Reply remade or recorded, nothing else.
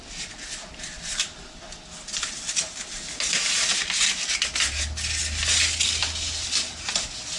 recorded